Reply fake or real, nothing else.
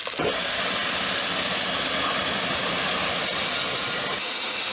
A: real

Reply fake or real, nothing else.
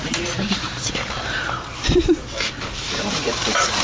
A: fake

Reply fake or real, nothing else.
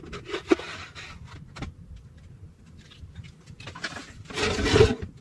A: real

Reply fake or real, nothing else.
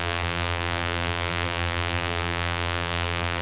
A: fake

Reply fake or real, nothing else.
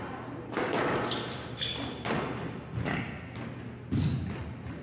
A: real